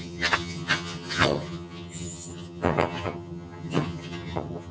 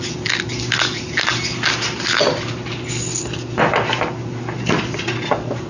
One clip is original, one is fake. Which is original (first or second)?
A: second